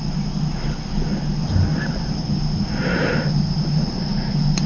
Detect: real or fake real